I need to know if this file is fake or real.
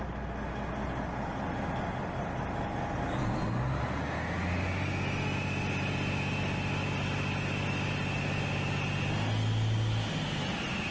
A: real